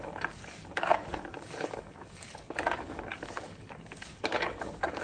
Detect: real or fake fake